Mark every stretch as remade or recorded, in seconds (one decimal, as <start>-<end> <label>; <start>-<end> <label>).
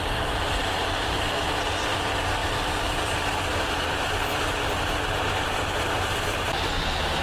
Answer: 0.0-7.2 remade